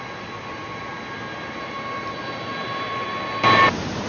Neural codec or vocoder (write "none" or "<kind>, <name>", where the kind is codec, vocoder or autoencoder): none